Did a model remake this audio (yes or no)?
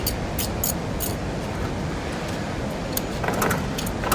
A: no